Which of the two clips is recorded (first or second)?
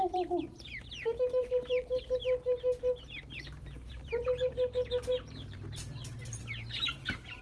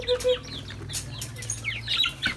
second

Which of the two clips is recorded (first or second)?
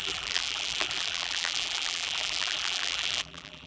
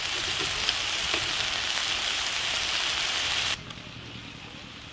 second